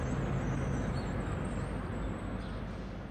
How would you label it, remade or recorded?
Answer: recorded